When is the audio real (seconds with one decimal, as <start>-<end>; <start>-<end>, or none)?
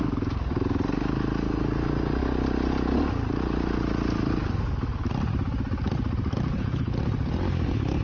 0.0-6.5; 7.0-8.0